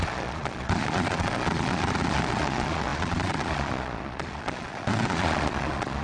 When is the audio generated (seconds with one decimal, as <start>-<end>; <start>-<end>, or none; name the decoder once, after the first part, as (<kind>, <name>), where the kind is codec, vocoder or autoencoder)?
0.0-6.0 (vocoder, Vocos)